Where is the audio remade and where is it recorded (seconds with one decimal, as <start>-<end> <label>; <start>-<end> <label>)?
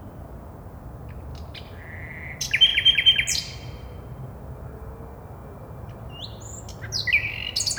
0.0-7.8 recorded